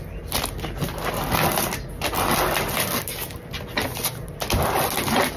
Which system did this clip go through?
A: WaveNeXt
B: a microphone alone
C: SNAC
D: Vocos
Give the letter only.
B